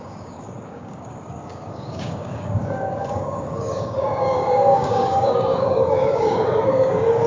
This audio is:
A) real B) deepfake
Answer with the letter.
B